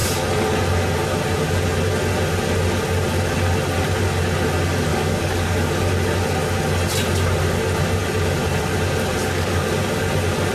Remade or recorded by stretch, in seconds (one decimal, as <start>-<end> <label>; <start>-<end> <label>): 0.0-4.9 recorded; 4.9-5.9 remade; 5.9-9.2 recorded; 9.2-9.7 remade; 9.7-10.5 recorded